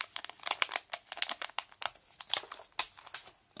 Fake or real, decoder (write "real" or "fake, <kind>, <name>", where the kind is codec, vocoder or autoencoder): real